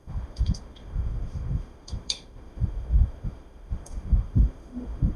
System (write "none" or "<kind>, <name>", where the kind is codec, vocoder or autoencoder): autoencoder, DAC-VAE